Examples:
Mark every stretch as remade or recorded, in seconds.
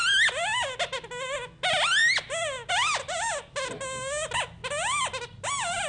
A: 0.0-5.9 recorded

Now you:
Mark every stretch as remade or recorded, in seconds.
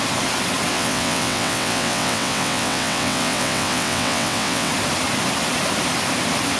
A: 0.0-0.7 recorded; 0.7-4.7 remade; 4.7-6.6 recorded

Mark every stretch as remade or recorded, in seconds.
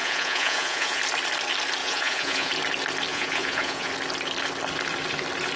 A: 0.0-1.0 remade; 1.0-1.8 recorded; 1.8-2.5 remade; 2.5-3.1 recorded; 3.1-3.9 remade; 3.9-5.6 recorded